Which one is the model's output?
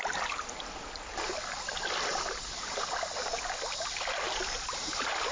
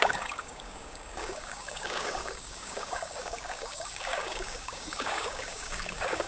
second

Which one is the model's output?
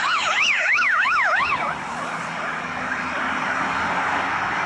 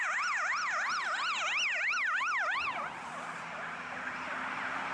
first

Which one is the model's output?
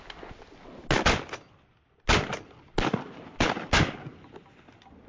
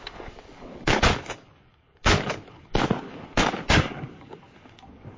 second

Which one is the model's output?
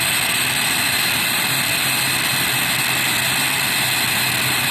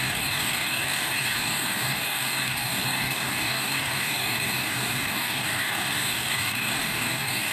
second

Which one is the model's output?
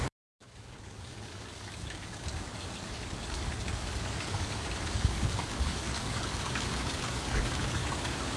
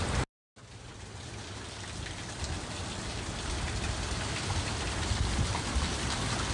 first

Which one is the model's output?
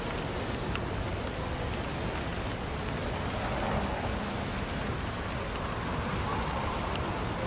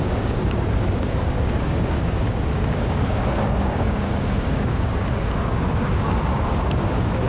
second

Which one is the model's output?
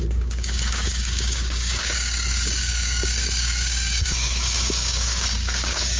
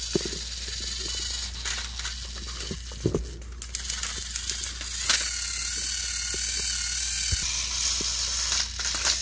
first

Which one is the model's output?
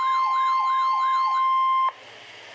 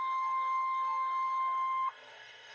second